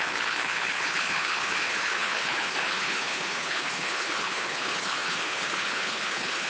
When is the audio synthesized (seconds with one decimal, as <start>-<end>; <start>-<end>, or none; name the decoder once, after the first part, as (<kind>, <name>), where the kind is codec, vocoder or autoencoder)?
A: 0.0-6.5 (codec, HILCodec)